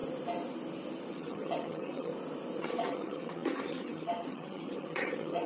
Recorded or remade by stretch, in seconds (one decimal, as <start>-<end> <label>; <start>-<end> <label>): 0.0-1.1 recorded; 1.1-2.1 remade; 2.1-2.6 recorded; 2.6-5.5 remade